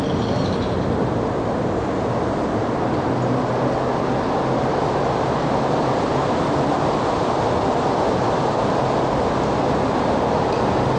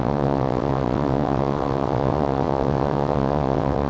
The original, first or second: first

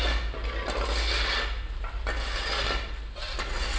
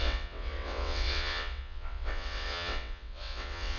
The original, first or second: first